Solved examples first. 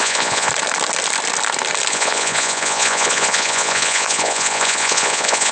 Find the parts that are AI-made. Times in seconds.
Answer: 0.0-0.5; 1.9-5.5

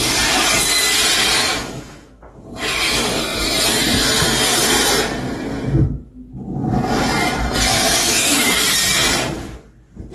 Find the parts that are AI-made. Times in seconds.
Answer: 1.4-2.2; 8.0-8.6

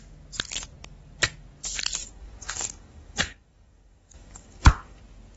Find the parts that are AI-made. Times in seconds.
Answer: 2.0-5.0

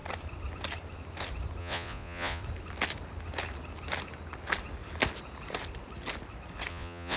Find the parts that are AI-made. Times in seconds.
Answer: 1.6-2.4; 6.7-7.2